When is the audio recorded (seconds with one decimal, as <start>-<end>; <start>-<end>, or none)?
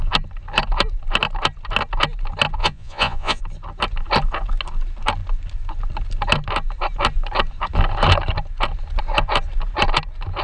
0.0-2.6; 3.4-10.4